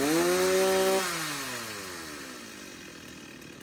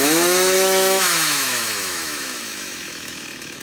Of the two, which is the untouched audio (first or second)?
first